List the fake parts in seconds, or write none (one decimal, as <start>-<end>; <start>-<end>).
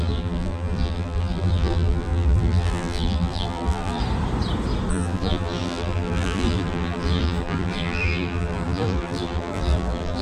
0.0-4.0; 4.9-10.2